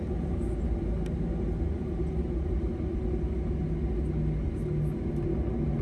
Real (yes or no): yes